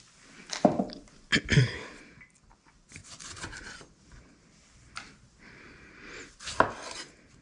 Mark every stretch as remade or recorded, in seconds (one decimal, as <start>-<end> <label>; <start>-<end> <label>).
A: 0.0-7.4 recorded